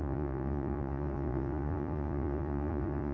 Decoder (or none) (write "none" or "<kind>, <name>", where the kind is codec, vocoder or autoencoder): vocoder, Vocos